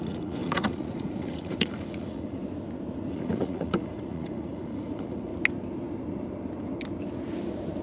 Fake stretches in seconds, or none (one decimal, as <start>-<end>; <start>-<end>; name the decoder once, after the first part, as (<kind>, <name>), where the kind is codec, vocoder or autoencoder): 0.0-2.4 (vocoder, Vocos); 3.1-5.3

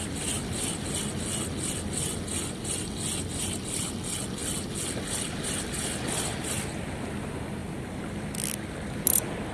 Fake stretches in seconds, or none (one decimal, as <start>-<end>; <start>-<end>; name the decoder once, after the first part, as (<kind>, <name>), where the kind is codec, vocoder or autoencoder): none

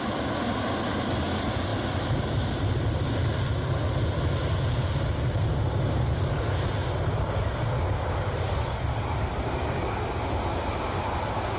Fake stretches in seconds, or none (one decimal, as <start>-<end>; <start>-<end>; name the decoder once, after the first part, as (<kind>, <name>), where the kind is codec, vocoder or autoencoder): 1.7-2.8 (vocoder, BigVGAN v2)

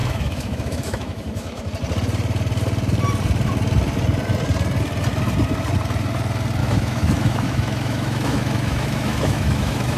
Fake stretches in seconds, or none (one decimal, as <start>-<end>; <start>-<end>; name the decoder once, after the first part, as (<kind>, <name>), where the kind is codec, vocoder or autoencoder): 0.0-1.7 (autoencoder, DAC-VAE); 6.6-10.0

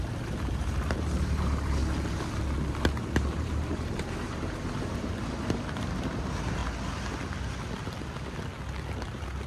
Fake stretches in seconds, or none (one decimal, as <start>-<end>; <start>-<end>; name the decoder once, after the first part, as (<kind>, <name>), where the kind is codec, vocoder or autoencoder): 0.0-1.8 (vocoder, BigVGAN v2); 2.7-6.6; 8.9-9.5